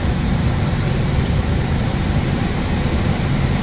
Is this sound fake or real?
fake